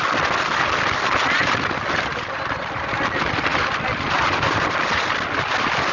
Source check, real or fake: real